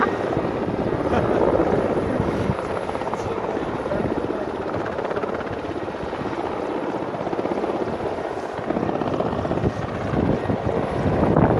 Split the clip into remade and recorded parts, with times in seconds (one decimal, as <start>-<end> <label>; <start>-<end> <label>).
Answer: 0.0-1.6 recorded; 1.6-5.3 remade; 5.3-11.6 recorded